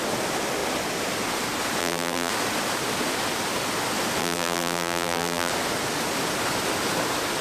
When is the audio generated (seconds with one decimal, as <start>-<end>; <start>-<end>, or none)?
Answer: 1.8-2.3; 4.2-5.5